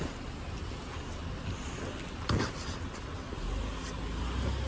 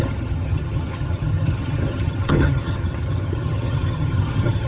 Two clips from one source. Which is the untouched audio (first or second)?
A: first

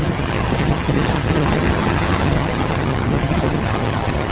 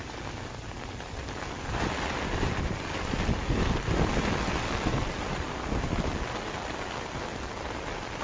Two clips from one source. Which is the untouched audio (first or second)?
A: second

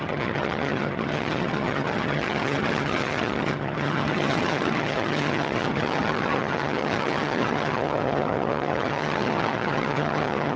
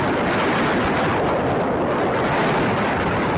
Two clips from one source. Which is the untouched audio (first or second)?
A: second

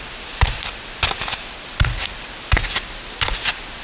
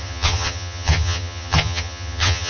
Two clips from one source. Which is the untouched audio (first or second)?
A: first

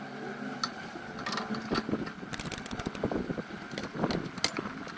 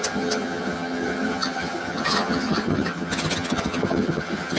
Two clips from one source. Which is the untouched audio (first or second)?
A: first